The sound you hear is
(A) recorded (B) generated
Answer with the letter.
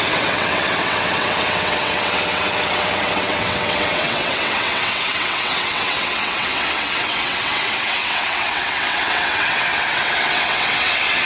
B